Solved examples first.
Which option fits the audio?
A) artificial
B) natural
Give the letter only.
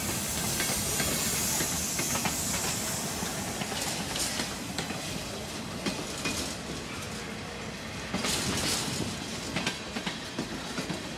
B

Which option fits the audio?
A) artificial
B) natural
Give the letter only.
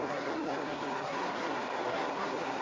A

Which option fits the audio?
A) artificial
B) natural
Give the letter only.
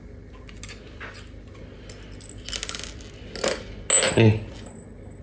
B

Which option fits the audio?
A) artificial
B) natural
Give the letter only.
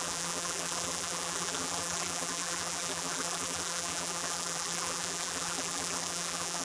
A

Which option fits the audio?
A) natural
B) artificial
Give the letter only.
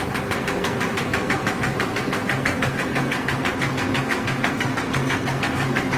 B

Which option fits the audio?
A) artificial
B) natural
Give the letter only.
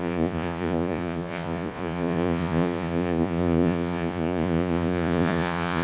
A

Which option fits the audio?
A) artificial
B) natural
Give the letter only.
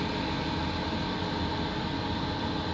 B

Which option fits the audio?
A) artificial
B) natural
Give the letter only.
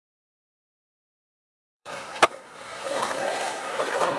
A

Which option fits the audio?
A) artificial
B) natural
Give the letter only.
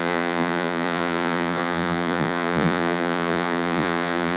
A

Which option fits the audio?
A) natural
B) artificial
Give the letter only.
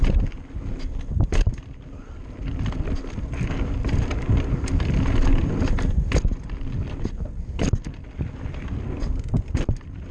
A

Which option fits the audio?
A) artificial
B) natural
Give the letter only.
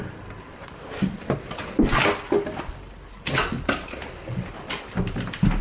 A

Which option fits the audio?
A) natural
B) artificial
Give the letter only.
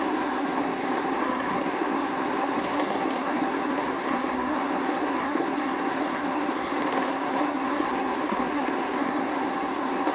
B